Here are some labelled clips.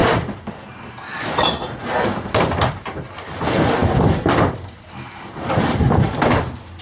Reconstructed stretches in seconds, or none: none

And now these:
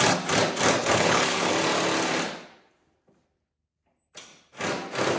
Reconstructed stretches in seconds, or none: 0.8-1.5 (codec, HILCodec)

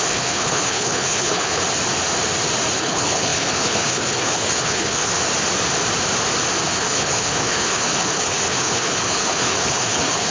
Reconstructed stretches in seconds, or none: 0.0-1.6 (codec, HILCodec); 2.8-5.2; 6.6-10.3

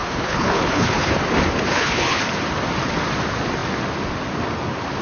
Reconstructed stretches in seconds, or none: 0.0-1.1 (codec, HILCodec); 1.7-2.2

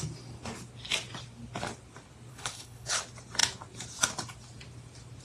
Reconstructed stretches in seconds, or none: 2.3-3.0 (codec, HILCodec)

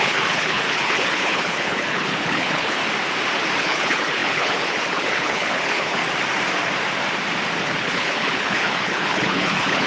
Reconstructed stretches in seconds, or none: 0.0-2.8 (codec, HILCodec); 3.6-6.0; 7.6-9.9

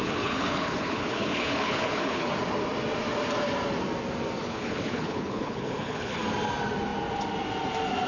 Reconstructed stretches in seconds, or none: 0.0-2.3 (codec, HILCodec); 4.4-6.2

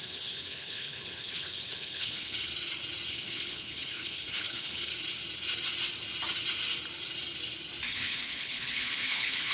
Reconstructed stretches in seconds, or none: 0.0-2.5 (codec, HILCodec); 3.1-4.9; 7.9-9.5